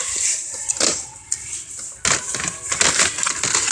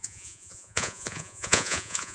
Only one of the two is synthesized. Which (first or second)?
second